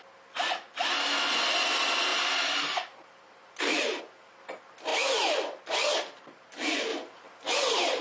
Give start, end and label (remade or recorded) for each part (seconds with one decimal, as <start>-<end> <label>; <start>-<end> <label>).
0.0-2.1 recorded; 2.1-4.0 remade; 4.0-8.0 recorded